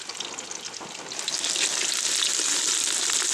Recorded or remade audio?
recorded